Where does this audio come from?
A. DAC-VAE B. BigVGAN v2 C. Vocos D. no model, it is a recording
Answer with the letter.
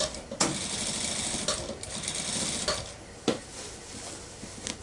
D